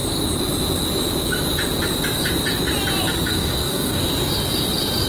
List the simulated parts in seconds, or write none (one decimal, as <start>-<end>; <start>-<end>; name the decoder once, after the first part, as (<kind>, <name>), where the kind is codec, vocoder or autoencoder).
3.3-4.0 (codec, DAC)